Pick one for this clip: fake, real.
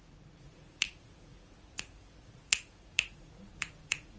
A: fake